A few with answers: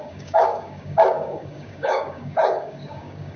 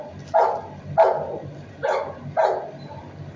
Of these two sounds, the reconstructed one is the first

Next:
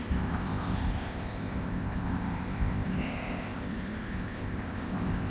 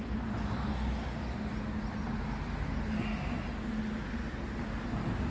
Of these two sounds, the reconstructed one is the first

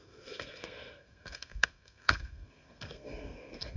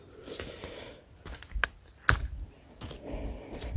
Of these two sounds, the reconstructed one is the first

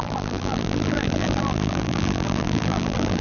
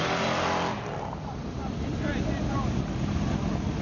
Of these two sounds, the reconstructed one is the first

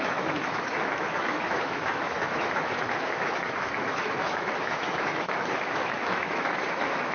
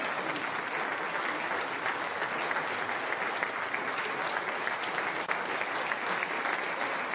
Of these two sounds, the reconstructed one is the first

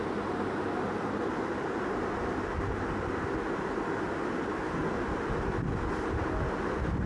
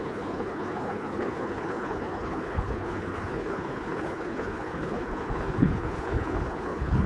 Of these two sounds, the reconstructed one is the second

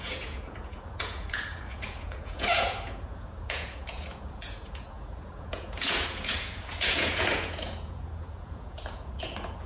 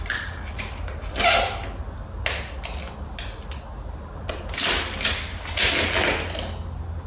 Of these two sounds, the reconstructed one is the first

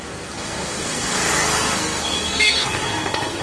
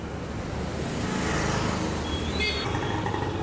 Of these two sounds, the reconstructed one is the first